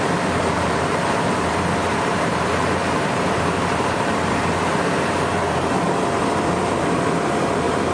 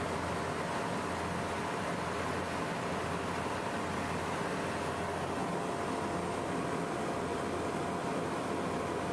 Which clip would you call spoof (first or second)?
first